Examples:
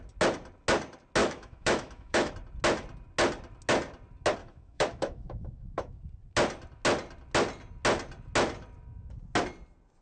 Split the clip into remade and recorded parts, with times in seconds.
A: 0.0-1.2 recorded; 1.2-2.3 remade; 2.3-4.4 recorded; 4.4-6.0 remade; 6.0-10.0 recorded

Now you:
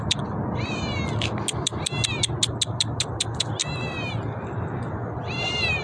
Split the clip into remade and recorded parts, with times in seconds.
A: 0.0-5.8 recorded

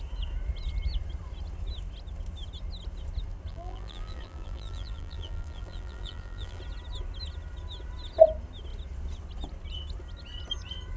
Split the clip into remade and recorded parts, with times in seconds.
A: 0.0-3.5 recorded; 3.5-6.6 remade; 6.6-11.0 recorded